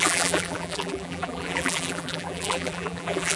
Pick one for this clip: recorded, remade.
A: remade